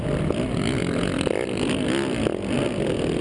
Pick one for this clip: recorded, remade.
recorded